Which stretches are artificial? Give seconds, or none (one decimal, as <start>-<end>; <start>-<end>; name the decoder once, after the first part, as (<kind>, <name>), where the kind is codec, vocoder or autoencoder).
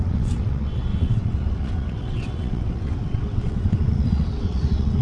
0.0-5.0 (vocoder, WaveNeXt)